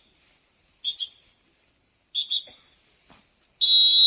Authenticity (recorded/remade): recorded